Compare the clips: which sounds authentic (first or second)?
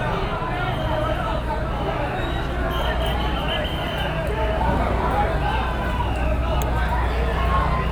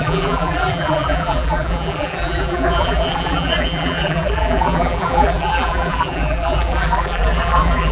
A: first